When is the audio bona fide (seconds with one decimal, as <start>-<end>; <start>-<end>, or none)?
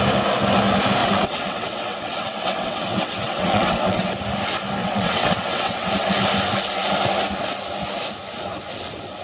0.0-1.0; 4.1-4.8; 5.9-9.2